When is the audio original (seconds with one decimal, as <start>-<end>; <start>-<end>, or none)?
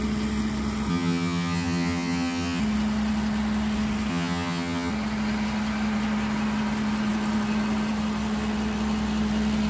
0.0-0.9; 2.6-4.1; 4.9-9.7